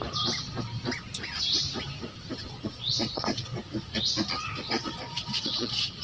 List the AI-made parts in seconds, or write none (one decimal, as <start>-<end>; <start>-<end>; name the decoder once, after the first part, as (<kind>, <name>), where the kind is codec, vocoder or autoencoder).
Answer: 2.4-3.5 (vocoder, Vocos); 4.6-6.0